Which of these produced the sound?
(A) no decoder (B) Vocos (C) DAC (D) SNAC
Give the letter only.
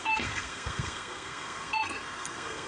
D